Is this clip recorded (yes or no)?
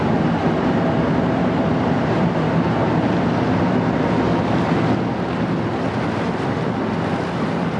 yes